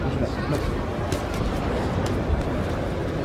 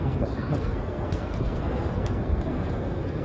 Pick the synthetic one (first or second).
second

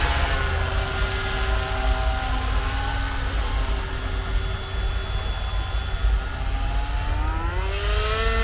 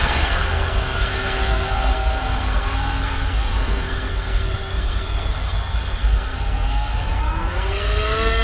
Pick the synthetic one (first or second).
second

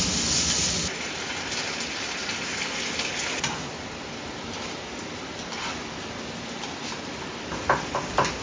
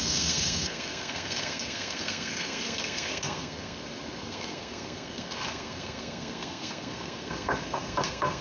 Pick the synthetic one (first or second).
second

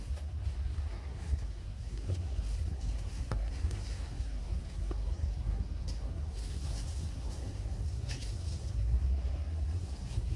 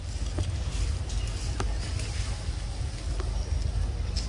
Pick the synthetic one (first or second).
first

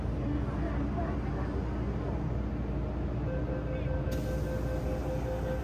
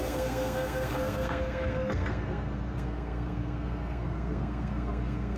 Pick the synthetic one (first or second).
second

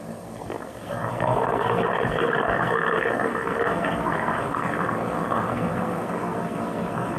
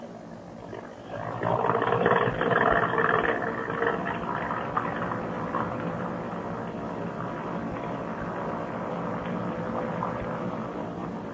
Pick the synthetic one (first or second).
first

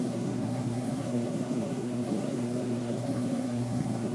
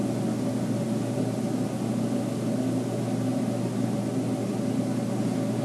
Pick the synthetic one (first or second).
first